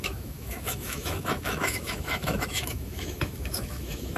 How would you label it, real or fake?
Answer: fake